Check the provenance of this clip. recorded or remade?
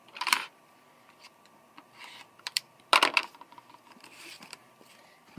remade